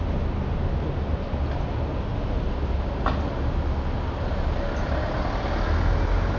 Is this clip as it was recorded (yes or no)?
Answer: yes